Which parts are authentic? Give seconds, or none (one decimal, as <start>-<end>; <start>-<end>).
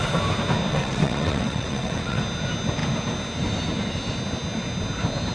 0.0-0.7; 2.2-5.3